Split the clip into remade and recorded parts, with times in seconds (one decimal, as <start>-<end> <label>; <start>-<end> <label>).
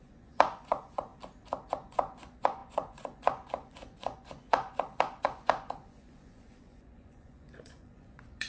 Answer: 0.0-1.1 remade; 1.1-1.7 recorded; 1.7-8.5 remade